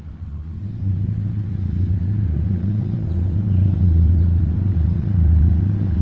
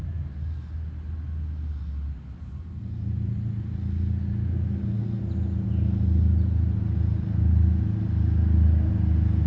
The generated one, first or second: first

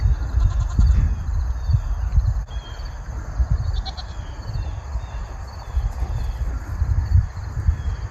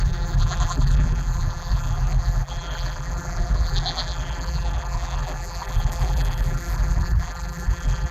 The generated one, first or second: second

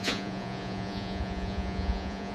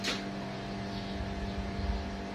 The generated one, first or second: first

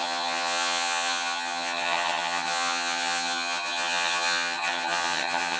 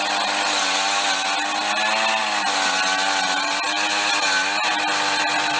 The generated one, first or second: first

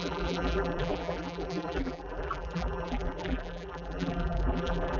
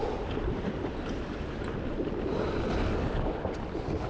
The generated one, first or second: first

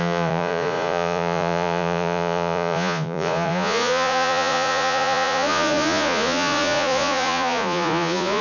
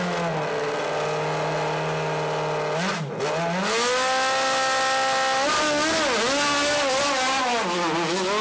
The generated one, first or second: first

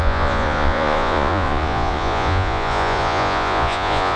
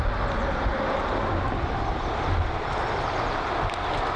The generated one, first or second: first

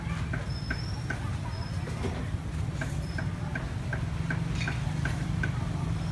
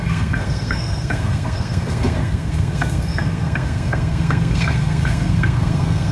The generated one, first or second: second